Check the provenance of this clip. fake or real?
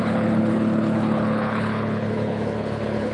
fake